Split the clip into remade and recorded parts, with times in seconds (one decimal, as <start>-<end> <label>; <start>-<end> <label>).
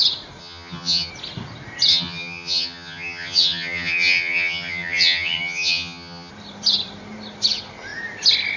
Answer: 0.0-0.4 recorded; 0.4-1.1 remade; 1.1-1.9 recorded; 1.9-6.3 remade; 6.3-8.6 recorded